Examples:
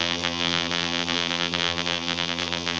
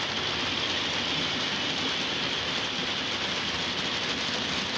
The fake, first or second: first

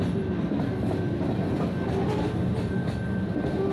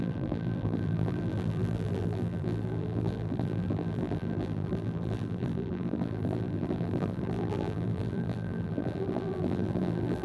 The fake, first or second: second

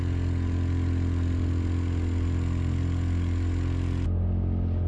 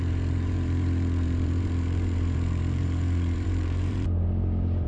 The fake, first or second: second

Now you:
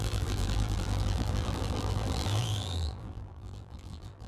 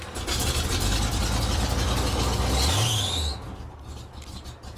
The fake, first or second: first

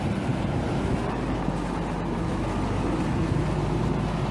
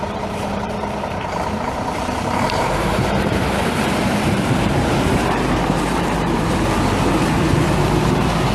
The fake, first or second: second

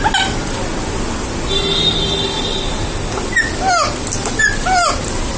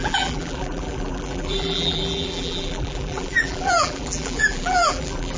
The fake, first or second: second